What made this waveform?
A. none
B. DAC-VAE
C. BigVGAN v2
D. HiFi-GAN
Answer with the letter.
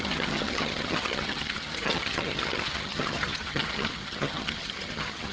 D